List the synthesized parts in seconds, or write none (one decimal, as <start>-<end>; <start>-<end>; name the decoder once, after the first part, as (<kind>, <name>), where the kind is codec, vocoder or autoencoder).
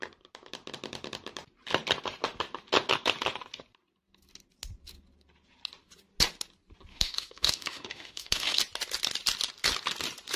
6.9-8.6 (autoencoder, DAC-VAE)